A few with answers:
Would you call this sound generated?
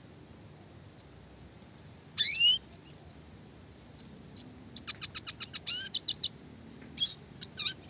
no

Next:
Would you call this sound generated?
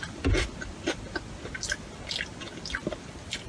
no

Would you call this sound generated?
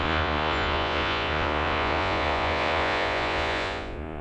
yes